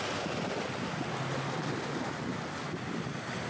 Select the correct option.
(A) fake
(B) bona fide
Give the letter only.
B